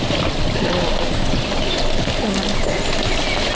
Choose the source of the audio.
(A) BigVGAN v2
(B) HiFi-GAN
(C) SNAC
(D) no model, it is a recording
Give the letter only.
D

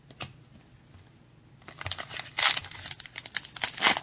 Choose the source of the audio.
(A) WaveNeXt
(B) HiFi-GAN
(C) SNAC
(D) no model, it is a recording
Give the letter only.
D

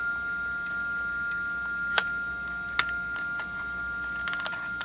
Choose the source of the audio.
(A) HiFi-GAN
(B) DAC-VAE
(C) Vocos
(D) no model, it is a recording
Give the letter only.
D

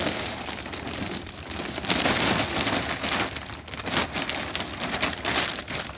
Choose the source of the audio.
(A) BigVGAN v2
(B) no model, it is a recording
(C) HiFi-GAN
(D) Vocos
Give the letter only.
B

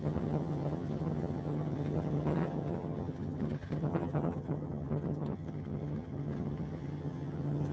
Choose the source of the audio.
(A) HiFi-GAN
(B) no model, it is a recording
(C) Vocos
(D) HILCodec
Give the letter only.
A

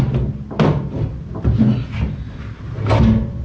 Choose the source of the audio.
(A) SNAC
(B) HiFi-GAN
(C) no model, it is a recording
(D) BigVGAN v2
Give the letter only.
C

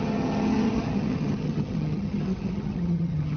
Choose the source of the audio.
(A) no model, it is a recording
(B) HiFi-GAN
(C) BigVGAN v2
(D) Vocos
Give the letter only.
B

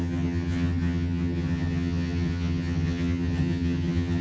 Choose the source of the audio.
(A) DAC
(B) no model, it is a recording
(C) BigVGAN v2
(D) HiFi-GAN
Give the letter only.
D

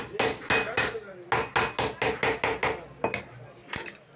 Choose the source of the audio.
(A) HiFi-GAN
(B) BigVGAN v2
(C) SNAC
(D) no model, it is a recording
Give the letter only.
D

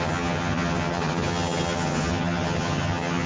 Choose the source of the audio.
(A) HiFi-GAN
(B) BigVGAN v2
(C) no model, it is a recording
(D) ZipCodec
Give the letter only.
A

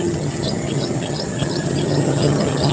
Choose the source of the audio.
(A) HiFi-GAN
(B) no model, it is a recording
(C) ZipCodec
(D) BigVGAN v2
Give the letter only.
A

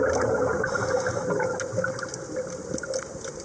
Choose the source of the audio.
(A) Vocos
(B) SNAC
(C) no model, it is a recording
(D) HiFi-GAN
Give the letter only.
C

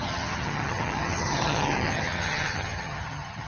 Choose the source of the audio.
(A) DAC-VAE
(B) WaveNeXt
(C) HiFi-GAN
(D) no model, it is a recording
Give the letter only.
C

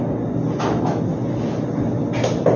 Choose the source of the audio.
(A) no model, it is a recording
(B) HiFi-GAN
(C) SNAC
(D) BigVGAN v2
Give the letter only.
A